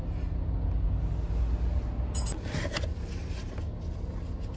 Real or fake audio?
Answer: real